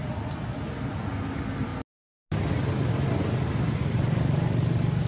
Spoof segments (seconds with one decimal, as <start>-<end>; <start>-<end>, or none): none